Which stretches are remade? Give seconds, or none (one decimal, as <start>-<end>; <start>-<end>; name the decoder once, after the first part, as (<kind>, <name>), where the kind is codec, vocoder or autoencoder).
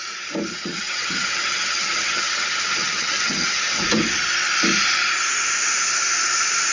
0.5-3.8 (vocoder, HiFi-GAN)